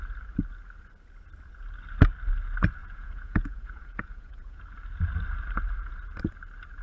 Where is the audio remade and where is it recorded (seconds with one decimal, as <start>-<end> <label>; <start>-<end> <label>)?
0.0-2.8 recorded; 2.8-4.6 remade; 4.6-6.8 recorded